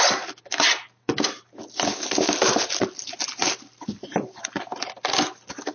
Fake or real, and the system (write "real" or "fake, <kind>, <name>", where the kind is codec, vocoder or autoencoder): real